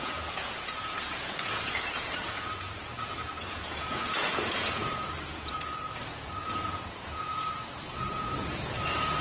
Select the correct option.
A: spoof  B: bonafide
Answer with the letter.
A